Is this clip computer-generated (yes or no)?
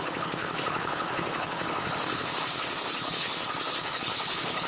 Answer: yes